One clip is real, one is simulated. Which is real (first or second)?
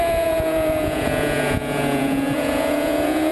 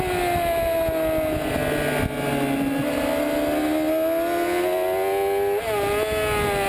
second